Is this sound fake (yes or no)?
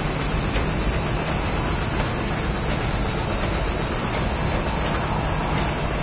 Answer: no